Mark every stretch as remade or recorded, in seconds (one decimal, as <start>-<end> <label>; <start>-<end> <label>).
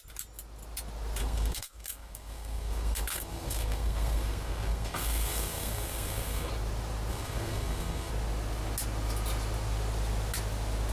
0.0-1.2 recorded; 1.2-6.5 remade; 6.5-7.1 recorded; 7.1-8.1 remade; 8.1-10.9 recorded